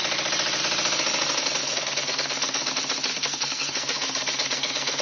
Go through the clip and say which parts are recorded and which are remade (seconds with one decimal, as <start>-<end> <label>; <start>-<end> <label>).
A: 0.0-1.6 recorded; 1.6-2.7 remade; 2.7-3.1 recorded; 3.1-5.0 remade